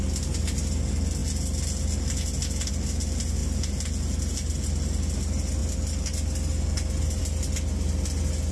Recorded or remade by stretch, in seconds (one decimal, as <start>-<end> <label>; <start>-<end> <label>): 0.0-8.5 recorded